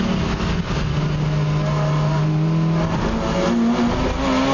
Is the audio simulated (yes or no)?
no